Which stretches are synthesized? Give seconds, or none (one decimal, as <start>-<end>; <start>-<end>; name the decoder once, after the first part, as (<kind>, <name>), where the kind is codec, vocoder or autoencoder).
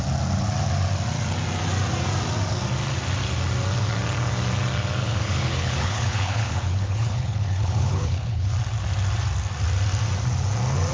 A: 5.0-8.5 (codec, HILCodec)